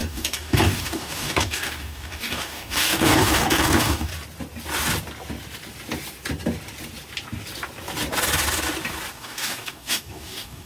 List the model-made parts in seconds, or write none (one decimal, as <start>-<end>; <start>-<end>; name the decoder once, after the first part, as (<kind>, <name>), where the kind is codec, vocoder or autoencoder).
0.0-4.1 (codec, DAC); 9.1-10.7